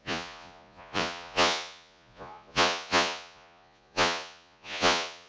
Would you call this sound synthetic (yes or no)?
yes